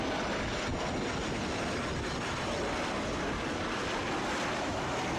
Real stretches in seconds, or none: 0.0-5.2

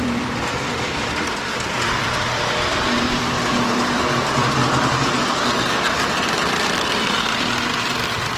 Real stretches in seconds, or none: 4.6-6.1

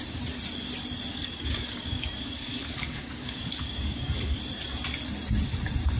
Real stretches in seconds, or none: 0.0-1.1; 4.4-6.0

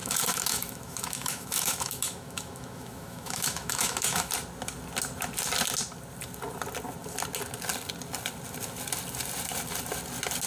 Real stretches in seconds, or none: 4.3-10.5

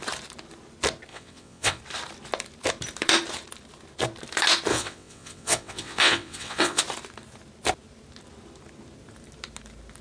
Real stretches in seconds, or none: 0.0-1.1; 1.8-4.7; 6.8-10.0

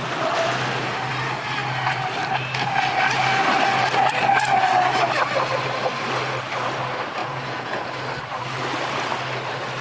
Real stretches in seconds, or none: 0.0-7.2; 7.8-9.8

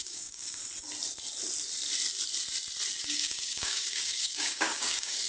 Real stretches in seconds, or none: 0.6-3.0

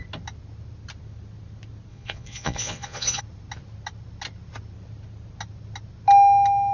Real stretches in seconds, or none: 0.0-1.9; 3.2-6.7